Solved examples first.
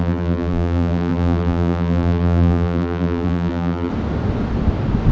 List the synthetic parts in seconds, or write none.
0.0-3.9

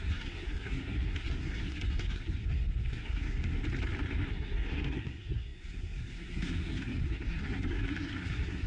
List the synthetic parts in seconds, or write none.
0.0-3.6; 4.3-8.7

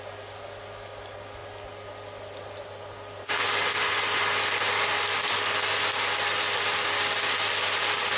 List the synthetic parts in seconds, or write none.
none

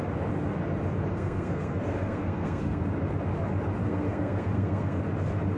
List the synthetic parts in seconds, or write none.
1.1-2.8; 3.8-5.0

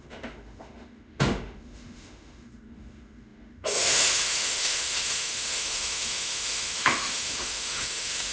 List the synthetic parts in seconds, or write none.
0.0-8.3

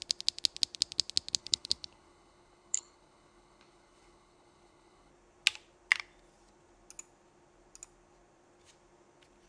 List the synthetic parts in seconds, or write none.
1.4-5.1

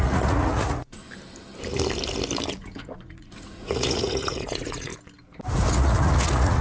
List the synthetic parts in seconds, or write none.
0.0-1.0; 2.6-4.9; 5.7-6.6